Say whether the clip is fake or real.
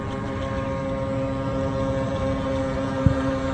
real